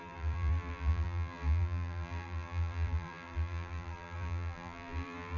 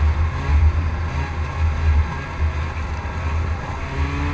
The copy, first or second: first